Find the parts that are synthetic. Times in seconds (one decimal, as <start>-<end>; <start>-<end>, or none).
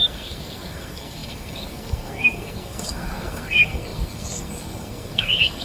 0.0-5.6